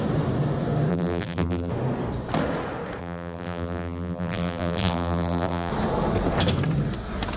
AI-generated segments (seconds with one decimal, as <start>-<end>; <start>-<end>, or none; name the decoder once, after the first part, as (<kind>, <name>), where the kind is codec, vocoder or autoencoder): 0.9-1.7 (vocoder, BigVGAN v2); 3.0-5.7